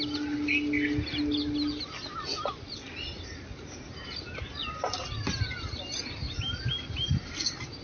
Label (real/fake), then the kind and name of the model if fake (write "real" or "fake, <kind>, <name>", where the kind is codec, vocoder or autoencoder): real